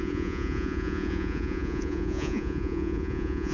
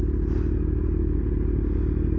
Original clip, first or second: second